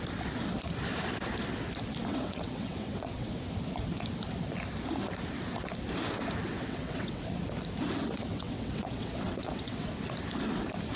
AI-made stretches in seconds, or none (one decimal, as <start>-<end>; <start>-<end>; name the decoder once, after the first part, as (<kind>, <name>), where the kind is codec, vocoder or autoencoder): 2.1-3.3 (vocoder, WaveNeXt); 6.5-7.2; 8.3-9.9